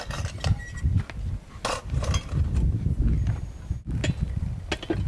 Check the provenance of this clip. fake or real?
real